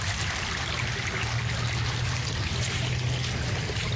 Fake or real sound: real